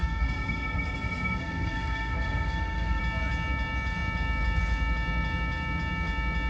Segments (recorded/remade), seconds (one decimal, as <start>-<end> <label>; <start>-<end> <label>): 0.0-3.0 remade; 3.0-6.5 recorded